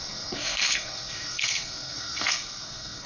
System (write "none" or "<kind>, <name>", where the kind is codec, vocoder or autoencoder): codec, SNAC